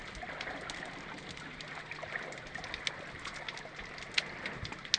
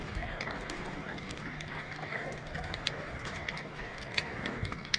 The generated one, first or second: second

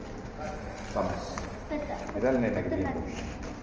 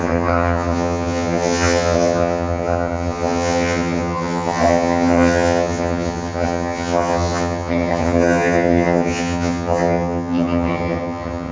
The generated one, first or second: second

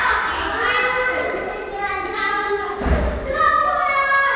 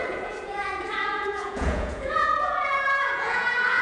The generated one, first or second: second